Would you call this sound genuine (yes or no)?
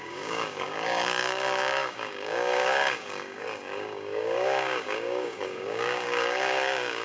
no